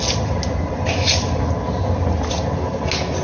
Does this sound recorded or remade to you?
recorded